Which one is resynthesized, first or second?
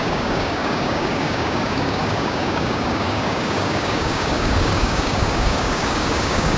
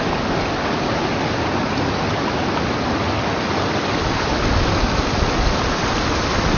first